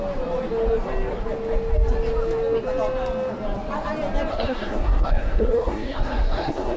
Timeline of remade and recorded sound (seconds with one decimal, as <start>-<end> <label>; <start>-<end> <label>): 0.0-4.3 recorded; 4.3-6.8 remade